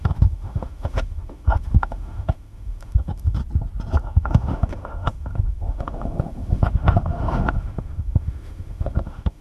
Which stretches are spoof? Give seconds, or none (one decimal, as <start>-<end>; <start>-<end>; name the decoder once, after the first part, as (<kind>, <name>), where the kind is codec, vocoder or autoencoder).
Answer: 0.0-3.4 (autoencoder, DAC-VAE); 4.0-9.4